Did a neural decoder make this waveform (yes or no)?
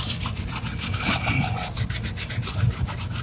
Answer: no